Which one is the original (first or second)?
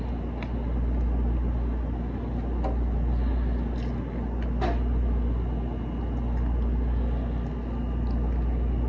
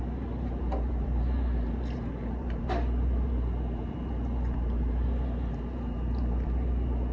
first